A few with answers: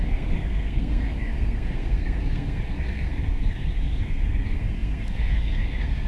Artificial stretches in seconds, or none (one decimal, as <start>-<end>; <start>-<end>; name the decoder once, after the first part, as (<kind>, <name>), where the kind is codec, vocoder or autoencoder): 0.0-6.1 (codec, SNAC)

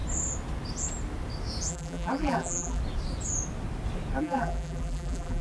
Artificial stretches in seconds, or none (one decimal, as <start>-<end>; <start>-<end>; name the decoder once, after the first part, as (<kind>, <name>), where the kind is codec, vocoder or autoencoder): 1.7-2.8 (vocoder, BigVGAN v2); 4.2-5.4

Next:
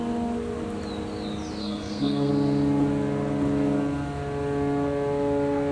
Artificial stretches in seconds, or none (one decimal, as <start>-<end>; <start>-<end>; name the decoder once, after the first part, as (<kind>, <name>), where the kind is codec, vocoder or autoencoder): 1.6-2.3 (codec, SNAC)